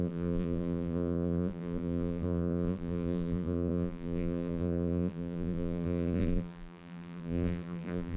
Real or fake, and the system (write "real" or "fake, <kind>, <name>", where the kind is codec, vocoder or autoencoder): fake, vocoder, BigVGAN v2